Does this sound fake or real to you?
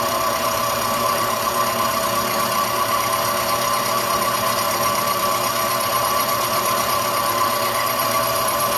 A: fake